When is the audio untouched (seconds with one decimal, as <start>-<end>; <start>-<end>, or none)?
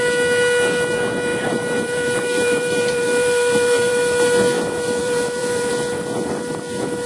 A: 0.0-1.3; 3.9-5.0; 5.7-7.1